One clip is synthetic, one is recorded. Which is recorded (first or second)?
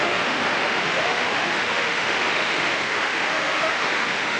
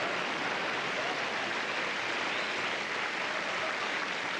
second